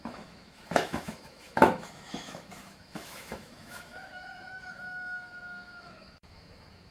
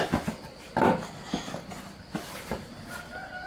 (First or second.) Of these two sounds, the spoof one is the first